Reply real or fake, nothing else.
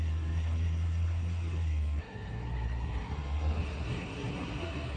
fake